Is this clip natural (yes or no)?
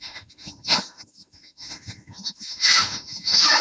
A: no